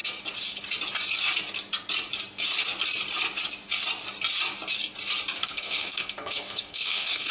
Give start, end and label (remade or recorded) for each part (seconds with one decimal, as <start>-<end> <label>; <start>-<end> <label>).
0.0-5.4 recorded; 5.4-7.3 remade